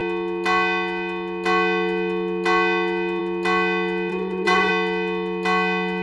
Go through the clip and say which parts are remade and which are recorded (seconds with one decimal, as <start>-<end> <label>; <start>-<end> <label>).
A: 0.0-4.1 recorded; 4.1-4.7 remade; 4.7-6.0 recorded